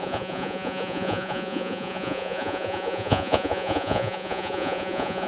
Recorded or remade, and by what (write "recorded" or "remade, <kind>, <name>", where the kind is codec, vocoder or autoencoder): remade, vocoder, Vocos